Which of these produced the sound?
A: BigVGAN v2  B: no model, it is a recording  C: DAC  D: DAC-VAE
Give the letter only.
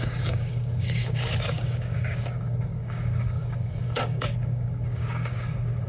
C